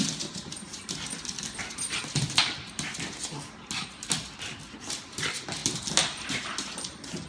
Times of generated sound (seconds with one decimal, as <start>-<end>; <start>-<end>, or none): none